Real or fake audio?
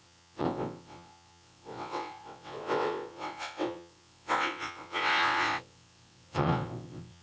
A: fake